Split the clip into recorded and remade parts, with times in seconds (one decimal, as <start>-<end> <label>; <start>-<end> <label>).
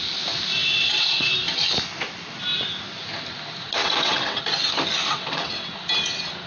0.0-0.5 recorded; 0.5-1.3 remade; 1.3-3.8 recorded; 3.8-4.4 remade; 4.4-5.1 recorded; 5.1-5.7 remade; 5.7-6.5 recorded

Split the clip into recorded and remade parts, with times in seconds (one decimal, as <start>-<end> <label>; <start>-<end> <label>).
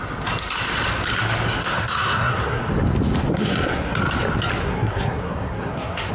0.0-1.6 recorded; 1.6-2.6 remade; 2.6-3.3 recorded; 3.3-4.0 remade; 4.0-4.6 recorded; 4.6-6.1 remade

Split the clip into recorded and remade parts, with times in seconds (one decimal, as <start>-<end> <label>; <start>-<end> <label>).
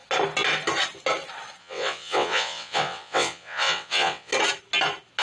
0.0-1.6 recorded; 1.6-4.3 remade; 4.3-5.2 recorded